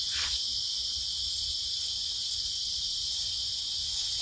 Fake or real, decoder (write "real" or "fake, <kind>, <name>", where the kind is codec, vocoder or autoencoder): fake, vocoder, Vocos